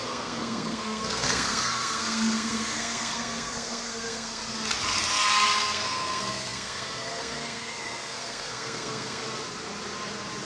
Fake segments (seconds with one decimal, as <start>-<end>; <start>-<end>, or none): 0.0-4.4; 5.3-9.2